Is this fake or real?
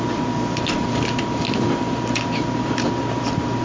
real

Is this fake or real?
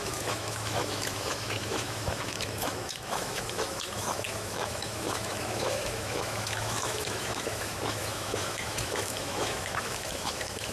fake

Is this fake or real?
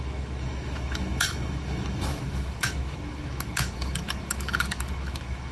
fake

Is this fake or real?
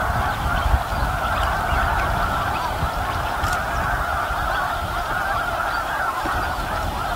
real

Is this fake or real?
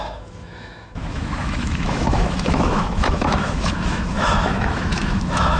fake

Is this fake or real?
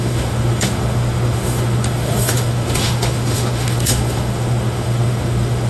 fake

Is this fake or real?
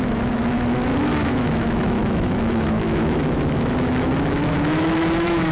fake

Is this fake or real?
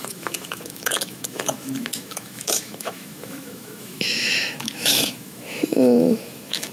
fake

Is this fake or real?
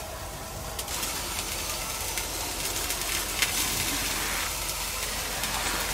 real